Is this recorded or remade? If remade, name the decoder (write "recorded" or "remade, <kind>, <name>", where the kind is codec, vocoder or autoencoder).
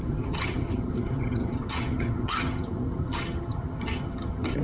remade, vocoder, HiFi-GAN